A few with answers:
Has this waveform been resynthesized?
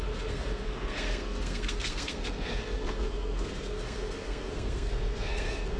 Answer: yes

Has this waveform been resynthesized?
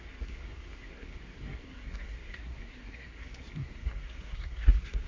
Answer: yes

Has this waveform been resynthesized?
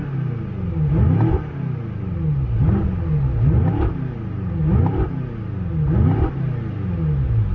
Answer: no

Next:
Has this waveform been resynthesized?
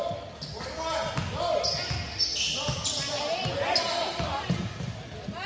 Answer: no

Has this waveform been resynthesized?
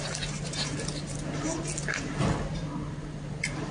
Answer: no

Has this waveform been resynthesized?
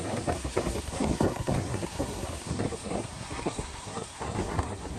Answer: yes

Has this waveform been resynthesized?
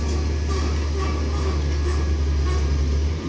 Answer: no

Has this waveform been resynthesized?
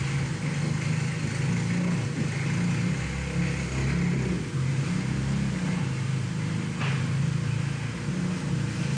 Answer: no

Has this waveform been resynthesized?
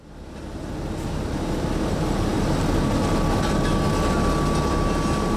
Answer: no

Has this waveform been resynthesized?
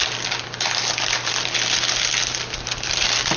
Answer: no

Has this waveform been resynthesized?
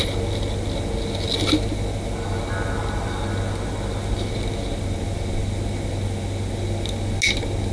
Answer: no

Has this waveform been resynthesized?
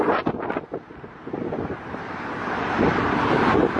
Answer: no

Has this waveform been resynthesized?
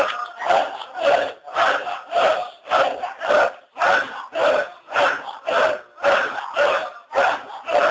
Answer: no